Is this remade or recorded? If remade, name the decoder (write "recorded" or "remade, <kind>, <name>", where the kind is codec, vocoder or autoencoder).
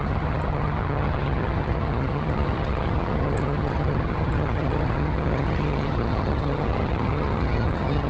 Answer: remade, vocoder, HiFi-GAN